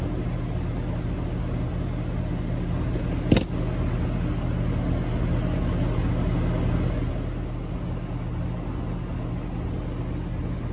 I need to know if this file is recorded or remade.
recorded